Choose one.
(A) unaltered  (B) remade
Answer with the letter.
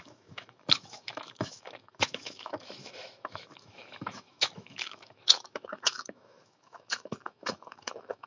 B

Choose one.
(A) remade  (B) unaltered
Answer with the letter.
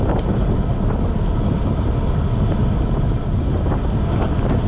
B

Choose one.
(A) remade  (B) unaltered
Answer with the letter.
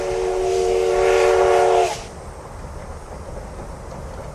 B